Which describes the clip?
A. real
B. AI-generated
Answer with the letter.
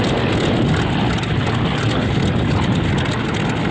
A